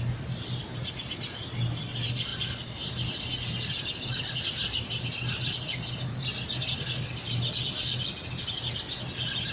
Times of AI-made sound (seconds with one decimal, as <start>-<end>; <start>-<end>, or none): none